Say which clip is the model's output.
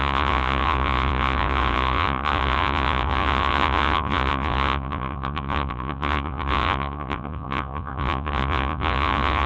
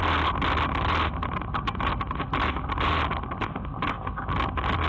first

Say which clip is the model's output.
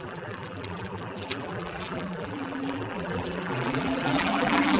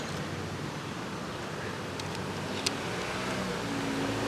first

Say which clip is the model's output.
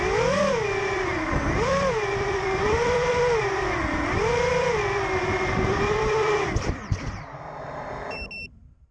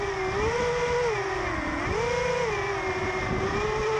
first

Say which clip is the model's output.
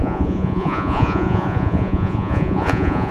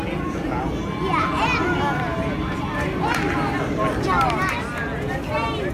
first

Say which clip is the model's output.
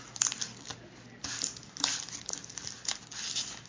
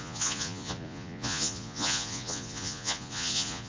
second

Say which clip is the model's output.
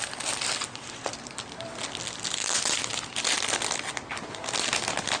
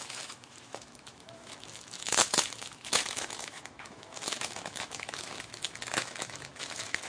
second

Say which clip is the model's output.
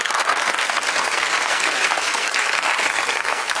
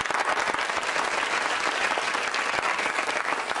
first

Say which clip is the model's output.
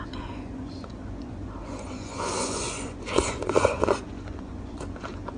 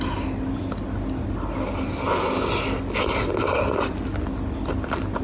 first